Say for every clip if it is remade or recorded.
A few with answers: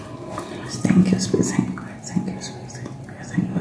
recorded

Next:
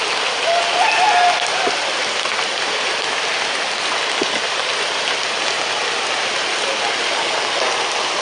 recorded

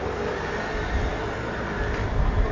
recorded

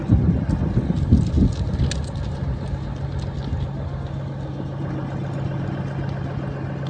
recorded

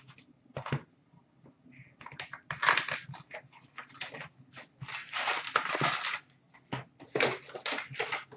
recorded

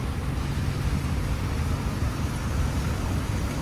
recorded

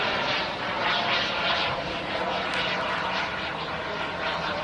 recorded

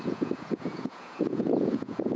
remade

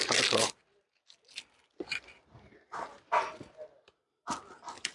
recorded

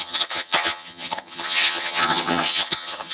remade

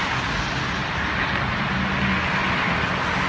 recorded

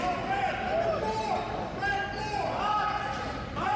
recorded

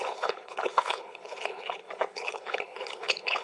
remade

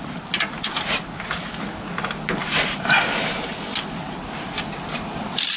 recorded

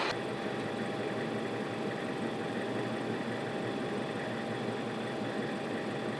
recorded